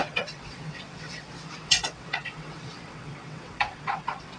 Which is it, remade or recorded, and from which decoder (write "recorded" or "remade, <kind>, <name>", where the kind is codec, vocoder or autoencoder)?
remade, vocoder, WaveNeXt